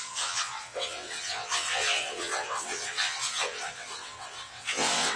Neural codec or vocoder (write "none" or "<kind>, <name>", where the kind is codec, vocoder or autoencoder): vocoder, WaveNeXt